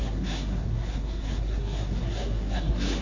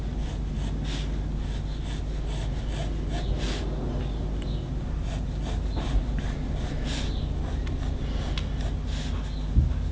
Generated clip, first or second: first